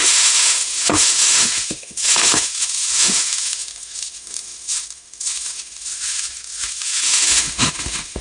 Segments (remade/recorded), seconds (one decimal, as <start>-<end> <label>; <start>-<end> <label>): 0.0-8.2 remade